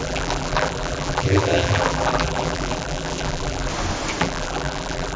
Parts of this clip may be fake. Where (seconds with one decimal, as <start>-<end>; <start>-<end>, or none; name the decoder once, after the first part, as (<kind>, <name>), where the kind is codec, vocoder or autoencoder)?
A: 0.0-3.7 (vocoder, BigVGAN v2); 4.2-5.2